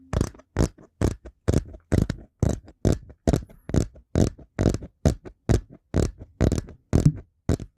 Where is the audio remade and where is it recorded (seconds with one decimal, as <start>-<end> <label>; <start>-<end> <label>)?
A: 0.0-2.0 recorded; 2.0-2.7 remade; 2.7-7.8 recorded